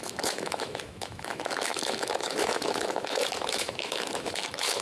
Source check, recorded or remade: remade